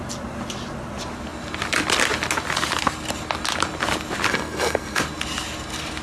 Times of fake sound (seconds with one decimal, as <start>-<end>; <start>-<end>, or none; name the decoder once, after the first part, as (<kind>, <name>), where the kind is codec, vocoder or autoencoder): 4.3-5.0 (codec, SNAC)